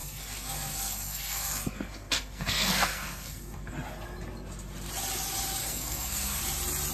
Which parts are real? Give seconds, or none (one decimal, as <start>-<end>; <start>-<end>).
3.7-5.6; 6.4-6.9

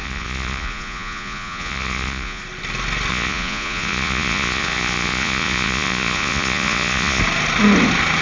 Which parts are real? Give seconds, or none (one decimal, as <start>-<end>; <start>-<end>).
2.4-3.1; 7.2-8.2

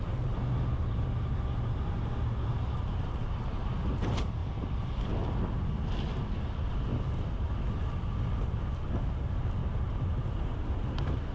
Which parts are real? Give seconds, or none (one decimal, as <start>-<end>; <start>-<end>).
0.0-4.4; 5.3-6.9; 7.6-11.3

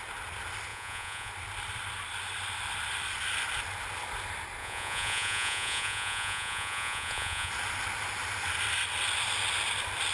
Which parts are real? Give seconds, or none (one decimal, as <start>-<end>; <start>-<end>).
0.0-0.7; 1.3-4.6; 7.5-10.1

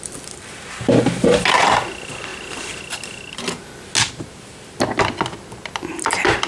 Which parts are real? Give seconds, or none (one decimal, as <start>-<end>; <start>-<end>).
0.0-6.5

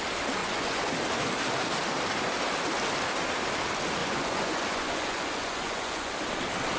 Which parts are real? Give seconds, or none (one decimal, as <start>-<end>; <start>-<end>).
0.0-0.4; 0.9-4.0; 6.1-6.8